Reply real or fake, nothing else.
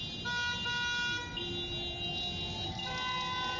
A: real